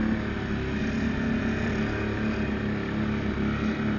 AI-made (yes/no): no